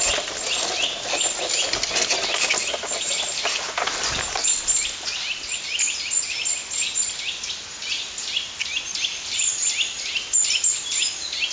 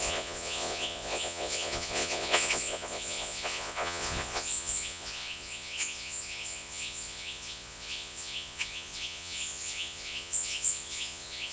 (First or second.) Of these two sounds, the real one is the first